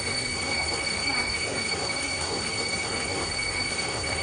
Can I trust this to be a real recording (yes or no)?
no